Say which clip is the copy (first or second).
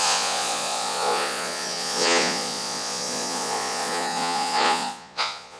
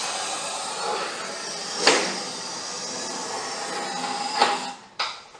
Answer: first